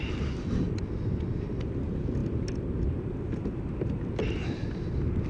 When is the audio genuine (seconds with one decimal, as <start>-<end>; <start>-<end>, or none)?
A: 0.0-5.3